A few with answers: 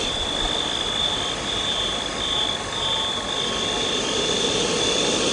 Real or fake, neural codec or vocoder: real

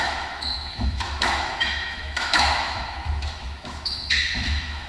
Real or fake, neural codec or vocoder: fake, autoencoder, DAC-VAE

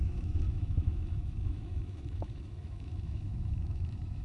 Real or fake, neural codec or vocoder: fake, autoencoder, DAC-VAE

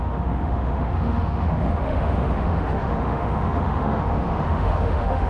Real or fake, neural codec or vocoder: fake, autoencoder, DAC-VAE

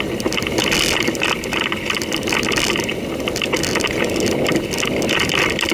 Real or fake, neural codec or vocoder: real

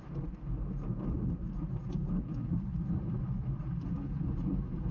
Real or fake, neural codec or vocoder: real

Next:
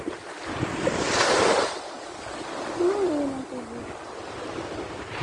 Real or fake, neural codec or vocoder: real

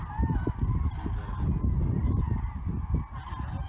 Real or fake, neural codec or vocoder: real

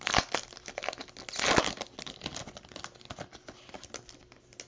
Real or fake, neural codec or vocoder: real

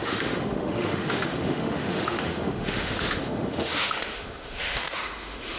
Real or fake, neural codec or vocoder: fake, autoencoder, DAC-VAE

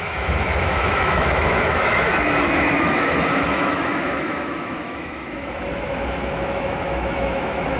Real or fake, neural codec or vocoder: fake, autoencoder, DAC-VAE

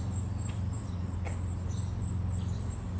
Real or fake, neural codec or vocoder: real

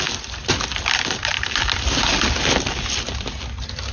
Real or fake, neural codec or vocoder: real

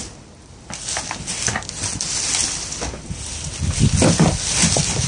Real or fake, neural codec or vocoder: real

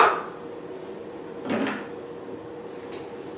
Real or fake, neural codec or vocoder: real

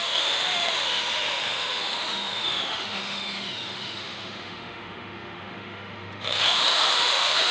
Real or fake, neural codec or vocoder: fake, autoencoder, DAC-VAE